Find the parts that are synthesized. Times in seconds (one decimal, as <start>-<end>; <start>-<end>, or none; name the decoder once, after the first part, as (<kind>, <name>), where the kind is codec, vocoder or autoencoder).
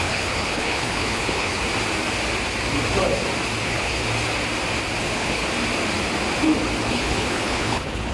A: 0.0-1.6 (codec, HILCodec); 3.6-4.0; 5.0-5.4; 6.9-8.1